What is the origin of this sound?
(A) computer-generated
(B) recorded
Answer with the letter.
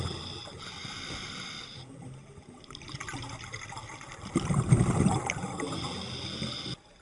B